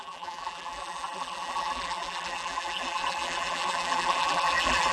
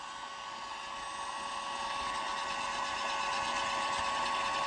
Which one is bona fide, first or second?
second